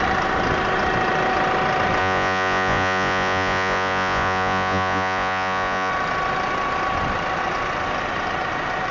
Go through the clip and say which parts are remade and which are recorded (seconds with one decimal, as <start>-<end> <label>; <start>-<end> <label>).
0.0-2.0 recorded; 2.0-5.9 remade; 5.9-8.9 recorded